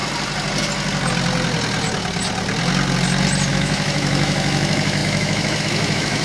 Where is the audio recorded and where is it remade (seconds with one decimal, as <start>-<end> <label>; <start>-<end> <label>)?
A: 0.0-3.5 recorded; 3.5-6.2 remade